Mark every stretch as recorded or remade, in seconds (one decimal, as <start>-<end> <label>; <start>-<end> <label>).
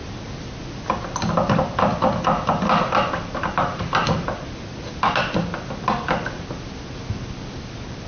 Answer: 0.0-8.1 recorded